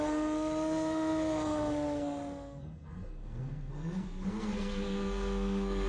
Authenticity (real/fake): fake